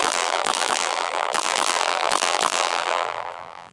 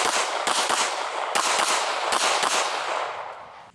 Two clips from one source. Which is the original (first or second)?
second